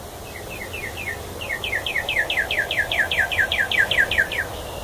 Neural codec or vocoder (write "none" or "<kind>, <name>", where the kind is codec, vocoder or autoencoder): none